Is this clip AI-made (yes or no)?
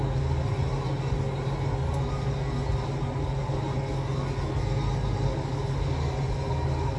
no